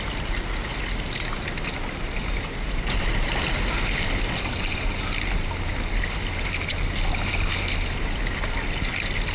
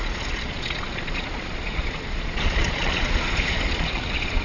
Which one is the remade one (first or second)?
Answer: second